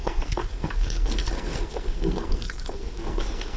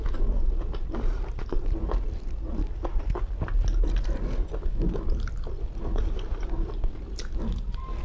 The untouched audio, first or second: second